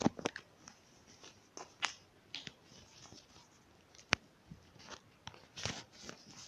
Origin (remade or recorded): recorded